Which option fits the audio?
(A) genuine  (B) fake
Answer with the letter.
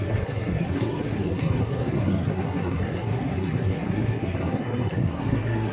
B